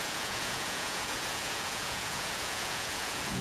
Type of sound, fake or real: fake